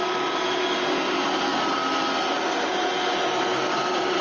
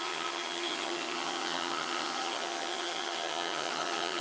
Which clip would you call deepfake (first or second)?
second